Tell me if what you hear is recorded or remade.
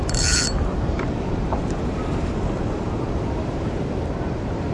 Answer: remade